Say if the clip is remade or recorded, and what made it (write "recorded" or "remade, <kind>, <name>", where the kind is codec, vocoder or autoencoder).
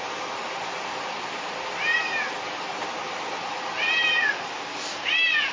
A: recorded